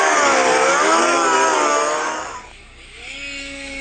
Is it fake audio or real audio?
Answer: fake